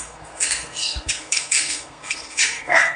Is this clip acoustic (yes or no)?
no